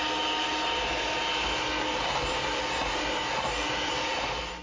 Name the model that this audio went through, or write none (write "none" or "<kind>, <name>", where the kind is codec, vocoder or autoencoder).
none